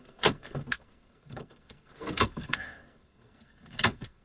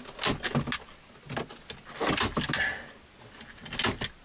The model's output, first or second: first